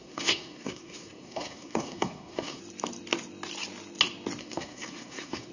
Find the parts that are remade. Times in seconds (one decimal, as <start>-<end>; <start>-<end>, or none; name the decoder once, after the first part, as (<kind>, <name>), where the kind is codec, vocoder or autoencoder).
0.0-2.6 (codec, SNAC); 4.4-5.5